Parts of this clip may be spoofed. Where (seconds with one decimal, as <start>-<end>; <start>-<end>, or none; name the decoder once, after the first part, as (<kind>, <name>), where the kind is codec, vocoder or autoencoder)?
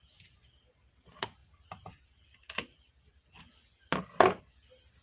none